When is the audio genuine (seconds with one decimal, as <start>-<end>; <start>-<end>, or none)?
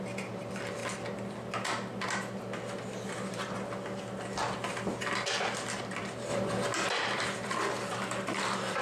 0.8-5.8; 6.3-6.9